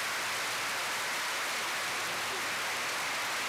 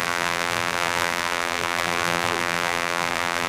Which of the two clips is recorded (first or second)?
first